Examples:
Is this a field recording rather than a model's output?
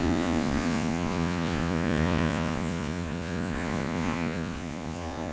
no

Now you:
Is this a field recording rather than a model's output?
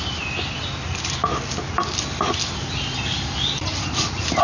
yes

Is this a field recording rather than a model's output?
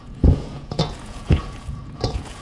no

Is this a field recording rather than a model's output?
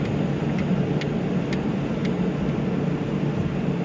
yes